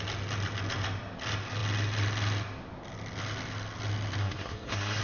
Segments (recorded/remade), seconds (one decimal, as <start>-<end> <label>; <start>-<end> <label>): 0.0-4.2 recorded; 4.2-5.0 remade

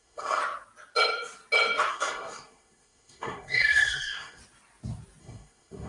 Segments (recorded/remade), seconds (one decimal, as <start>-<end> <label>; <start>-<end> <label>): 0.0-0.4 remade; 0.4-1.9 recorded; 1.9-4.4 remade; 4.4-5.2 recorded; 5.2-5.9 remade

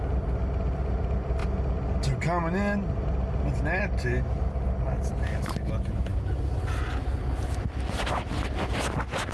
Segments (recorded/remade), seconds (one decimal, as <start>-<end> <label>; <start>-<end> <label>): 0.0-9.3 recorded

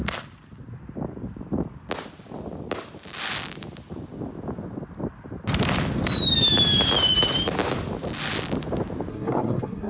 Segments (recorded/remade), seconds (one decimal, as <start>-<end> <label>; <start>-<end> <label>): 0.0-9.1 recorded; 9.1-9.9 remade

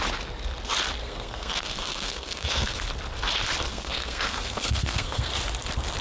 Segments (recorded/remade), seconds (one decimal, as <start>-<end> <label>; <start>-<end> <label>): 0.0-1.0 recorded; 1.0-2.8 remade; 2.8-3.7 recorded; 3.7-5.3 remade; 5.3-6.0 recorded

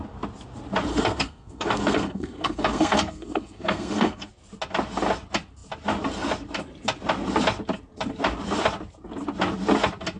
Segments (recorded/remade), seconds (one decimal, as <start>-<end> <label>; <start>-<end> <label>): 0.0-0.9 recorded; 0.9-4.3 remade; 4.3-10.2 recorded